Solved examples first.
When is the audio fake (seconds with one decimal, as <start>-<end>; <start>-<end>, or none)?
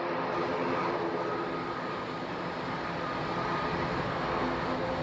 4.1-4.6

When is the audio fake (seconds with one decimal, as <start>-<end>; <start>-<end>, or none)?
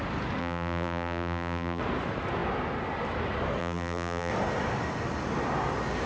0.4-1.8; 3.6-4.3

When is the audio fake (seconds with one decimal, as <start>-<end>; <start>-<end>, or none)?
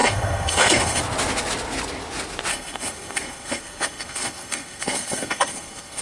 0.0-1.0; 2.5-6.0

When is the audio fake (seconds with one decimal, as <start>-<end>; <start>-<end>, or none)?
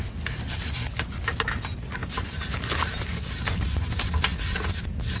2.0-3.2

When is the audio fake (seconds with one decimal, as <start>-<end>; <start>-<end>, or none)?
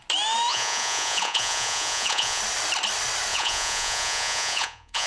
0.5-2.4; 3.3-5.1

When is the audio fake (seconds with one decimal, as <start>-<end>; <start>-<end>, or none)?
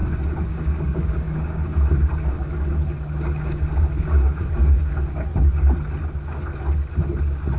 0.5-1.7; 4.0-5.3